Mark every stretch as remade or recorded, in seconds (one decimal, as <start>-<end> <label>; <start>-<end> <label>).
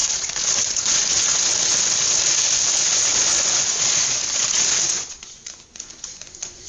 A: 0.0-6.7 remade